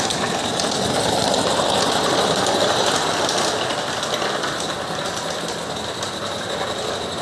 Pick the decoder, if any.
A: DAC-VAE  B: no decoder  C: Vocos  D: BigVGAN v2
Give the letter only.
B